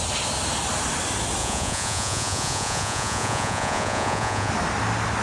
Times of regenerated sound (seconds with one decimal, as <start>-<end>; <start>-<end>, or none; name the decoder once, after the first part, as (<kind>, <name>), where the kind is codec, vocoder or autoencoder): 1.4-4.5 (vocoder, Vocos)